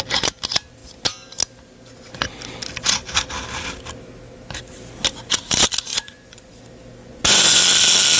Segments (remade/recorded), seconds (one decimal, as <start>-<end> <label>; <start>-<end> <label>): 0.0-5.9 recorded; 5.9-6.6 remade; 6.6-7.0 recorded; 7.0-7.6 remade; 7.6-8.2 recorded